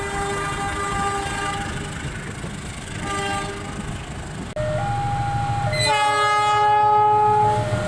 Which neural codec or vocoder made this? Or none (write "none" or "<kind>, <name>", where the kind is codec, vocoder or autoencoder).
none